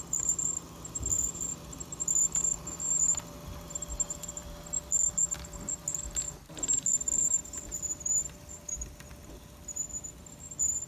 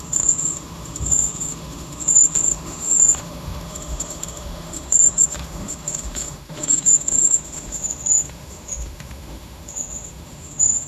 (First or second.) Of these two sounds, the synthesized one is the second